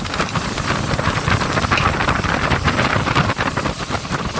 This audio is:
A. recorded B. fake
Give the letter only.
B